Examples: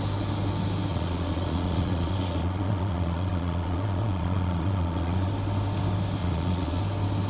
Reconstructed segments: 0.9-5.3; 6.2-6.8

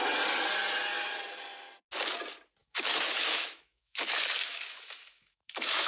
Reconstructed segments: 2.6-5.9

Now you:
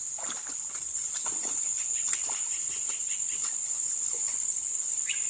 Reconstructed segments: none

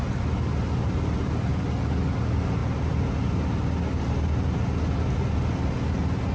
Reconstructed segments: none